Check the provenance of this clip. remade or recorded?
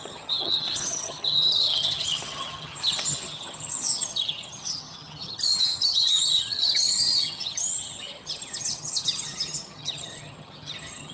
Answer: remade